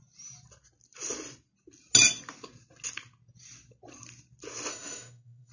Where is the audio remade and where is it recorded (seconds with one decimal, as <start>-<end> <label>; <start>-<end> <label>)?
0.0-4.7 recorded; 4.7-5.5 remade